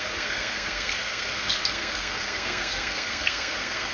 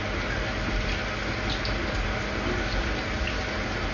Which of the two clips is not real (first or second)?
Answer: first